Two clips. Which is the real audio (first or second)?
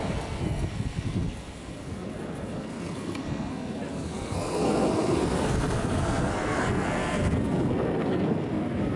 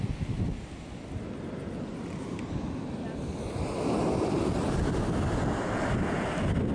second